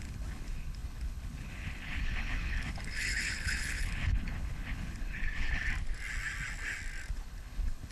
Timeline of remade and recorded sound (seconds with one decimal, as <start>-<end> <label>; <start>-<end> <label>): 0.0-5.7 remade; 5.7-7.1 recorded; 7.1-7.9 remade